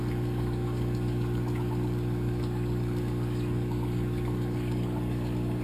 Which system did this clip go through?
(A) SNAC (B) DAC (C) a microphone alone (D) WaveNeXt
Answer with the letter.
B